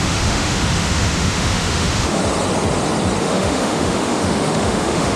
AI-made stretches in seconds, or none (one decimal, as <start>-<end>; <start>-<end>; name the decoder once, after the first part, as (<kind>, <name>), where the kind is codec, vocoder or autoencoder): 0.0-2.2 (autoencoder, DAC-VAE); 3.2-5.2